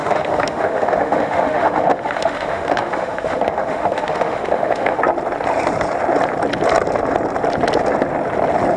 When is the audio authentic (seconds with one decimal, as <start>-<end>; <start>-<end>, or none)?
5.0-8.8